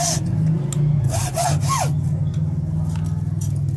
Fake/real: real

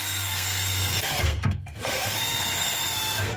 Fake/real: fake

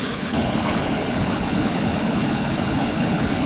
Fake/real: fake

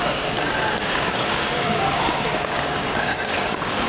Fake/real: fake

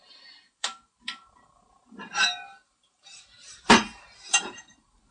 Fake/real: fake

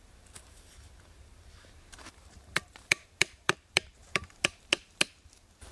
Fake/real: fake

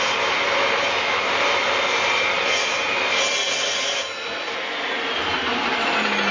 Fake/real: real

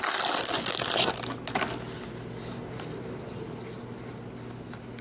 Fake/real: real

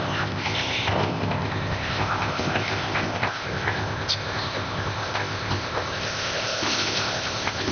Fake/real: fake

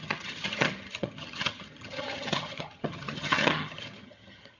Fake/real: fake